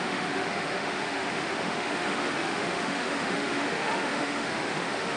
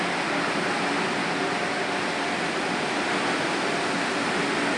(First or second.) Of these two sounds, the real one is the second